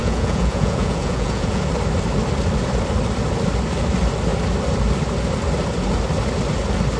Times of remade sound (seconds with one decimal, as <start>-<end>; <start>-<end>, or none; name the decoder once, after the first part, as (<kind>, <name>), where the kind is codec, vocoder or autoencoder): 0.0-1.6 (vocoder, Vocos)